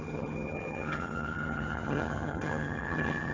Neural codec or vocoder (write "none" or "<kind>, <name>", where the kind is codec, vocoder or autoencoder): vocoder, HiFi-GAN